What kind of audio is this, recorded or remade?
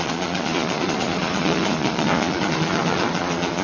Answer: remade